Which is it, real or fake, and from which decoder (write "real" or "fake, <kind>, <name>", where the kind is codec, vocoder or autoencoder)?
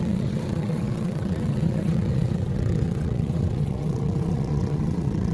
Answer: fake, vocoder, WaveNeXt